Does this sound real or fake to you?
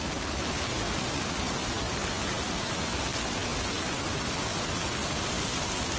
real